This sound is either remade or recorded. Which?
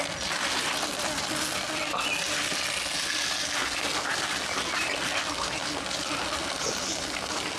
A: recorded